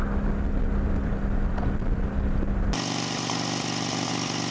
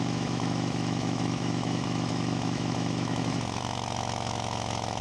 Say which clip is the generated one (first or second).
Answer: second